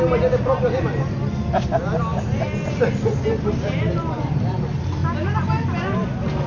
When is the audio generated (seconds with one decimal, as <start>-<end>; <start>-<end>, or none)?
none